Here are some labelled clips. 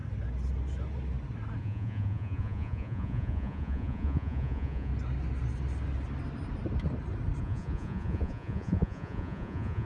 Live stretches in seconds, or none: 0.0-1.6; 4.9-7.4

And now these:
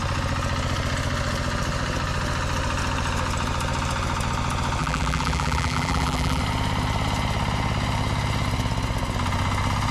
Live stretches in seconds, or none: 0.0-4.8; 6.4-9.9

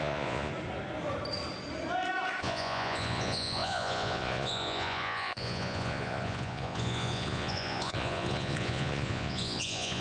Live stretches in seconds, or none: 0.5-2.4